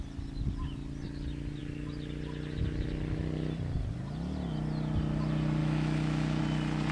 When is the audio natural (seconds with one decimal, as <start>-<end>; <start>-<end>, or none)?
0.0-5.6; 6.4-6.9